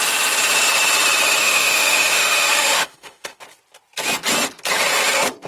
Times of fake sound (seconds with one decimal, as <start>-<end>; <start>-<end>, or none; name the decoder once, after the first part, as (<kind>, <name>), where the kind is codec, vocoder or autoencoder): 1.4-3.4 (autoencoder, DAC-VAE)